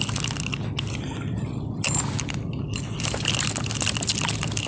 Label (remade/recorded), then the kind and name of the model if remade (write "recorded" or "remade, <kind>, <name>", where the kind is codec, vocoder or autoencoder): recorded